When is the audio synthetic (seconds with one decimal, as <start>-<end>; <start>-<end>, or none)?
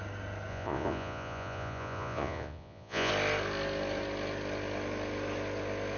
0.5-3.1